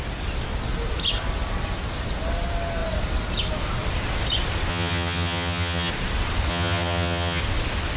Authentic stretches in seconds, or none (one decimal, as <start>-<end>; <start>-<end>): 0.0-4.7; 5.9-6.5; 7.4-8.0